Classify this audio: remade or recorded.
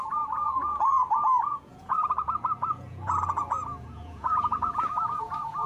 remade